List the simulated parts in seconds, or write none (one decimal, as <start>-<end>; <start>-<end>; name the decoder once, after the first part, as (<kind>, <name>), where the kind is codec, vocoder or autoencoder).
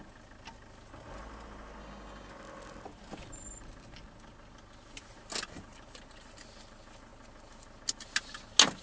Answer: 1.8-2.3 (codec, DAC)